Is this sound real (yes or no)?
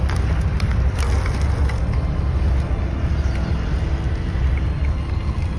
yes